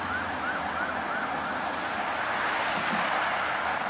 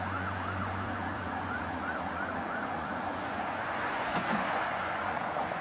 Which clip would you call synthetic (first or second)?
second